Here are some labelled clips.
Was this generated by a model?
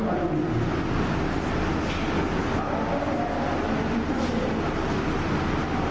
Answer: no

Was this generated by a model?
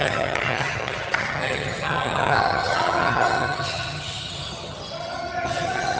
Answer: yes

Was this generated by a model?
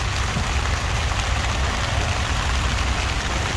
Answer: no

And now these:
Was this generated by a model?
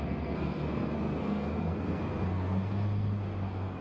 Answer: yes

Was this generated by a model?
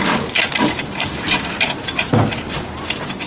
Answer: no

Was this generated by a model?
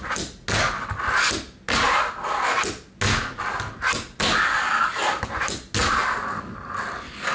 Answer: no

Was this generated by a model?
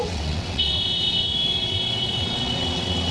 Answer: yes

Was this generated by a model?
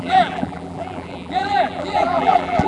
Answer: yes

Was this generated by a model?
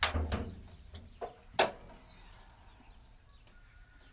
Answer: no